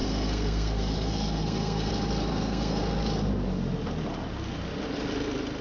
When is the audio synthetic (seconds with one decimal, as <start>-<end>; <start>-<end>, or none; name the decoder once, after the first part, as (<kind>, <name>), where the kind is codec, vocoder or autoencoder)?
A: 0.0-1.9 (codec, SNAC); 2.3-2.8

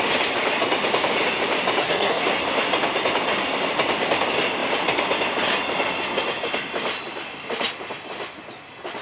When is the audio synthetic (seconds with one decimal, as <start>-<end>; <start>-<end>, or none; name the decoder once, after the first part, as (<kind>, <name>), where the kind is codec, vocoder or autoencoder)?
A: 1.8-2.4 (codec, SNAC)

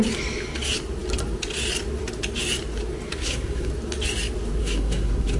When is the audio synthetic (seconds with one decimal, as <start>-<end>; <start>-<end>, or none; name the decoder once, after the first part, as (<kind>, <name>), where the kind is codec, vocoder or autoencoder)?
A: 3.2-3.7 (codec, SNAC); 4.6-5.4

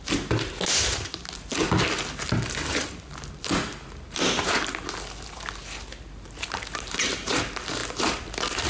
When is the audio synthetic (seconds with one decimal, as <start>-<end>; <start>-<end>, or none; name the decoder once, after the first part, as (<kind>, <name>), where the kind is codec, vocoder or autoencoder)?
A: none

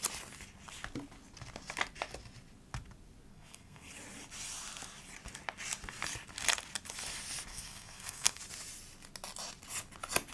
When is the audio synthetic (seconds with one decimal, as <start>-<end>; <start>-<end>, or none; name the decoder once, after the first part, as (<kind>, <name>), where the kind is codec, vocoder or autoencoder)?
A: 3.3-3.9 (codec, SNAC); 7.5-8.4

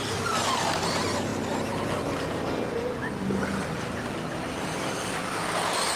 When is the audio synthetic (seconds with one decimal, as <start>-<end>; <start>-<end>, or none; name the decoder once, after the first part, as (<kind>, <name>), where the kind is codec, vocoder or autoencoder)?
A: none

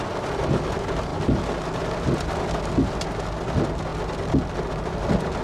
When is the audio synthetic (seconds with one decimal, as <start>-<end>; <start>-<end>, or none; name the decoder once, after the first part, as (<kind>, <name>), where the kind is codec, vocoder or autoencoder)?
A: none

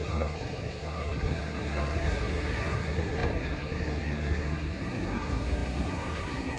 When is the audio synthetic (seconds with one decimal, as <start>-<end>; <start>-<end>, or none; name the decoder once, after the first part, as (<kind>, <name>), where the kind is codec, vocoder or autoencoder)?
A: 0.0-6.6 (codec, SNAC)